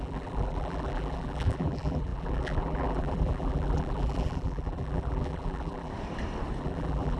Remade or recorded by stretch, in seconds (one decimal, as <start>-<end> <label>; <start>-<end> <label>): 0.0-5.9 remade; 5.9-6.6 recorded; 6.6-7.2 remade